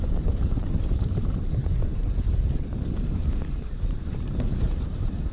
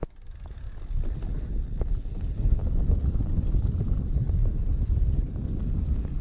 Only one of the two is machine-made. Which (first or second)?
first